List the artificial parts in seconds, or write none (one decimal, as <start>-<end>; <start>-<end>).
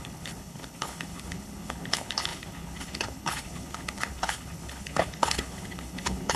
0.0-6.4